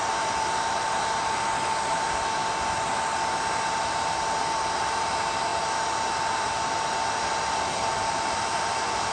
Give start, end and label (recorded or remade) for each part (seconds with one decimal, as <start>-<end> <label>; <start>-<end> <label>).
0.0-2.4 remade; 2.4-3.7 recorded; 3.7-5.5 remade; 5.5-7.3 recorded; 7.3-9.1 remade